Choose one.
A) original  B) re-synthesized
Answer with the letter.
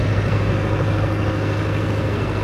B